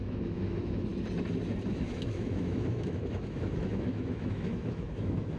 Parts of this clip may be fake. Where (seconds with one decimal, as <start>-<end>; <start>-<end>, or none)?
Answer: 0.0-0.9; 1.7-5.4